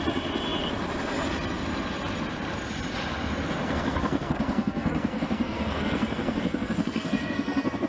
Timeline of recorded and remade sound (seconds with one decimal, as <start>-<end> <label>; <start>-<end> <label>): 0.0-3.6 recorded; 3.6-7.9 remade